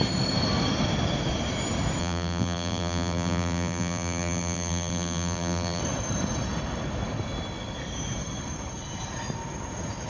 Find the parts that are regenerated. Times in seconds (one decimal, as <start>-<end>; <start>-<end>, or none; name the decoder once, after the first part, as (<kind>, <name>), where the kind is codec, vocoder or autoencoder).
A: 2.0-5.8 (vocoder, BigVGAN v2)